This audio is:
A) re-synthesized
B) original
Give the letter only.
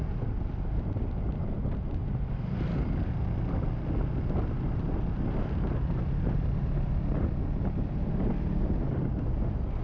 B